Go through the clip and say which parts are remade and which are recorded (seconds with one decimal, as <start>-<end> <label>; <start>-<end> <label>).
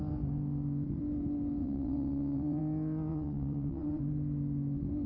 0.0-1.6 recorded; 1.6-2.6 remade; 2.6-3.1 recorded; 3.1-4.0 remade; 4.0-5.1 recorded